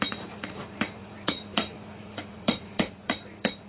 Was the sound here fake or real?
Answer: fake